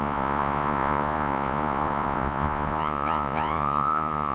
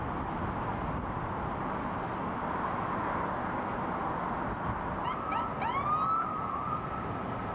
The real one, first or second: second